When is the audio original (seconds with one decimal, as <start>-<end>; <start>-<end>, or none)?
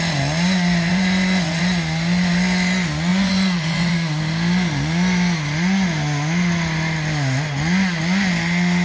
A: 0.0-0.9; 1.6-3.1; 3.9-8.8